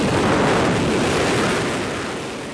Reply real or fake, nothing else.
real